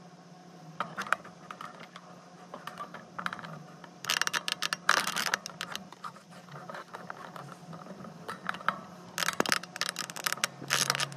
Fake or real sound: real